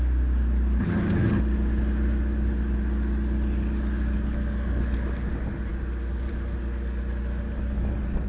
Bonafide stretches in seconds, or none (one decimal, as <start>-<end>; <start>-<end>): 0.0-0.8; 1.4-8.3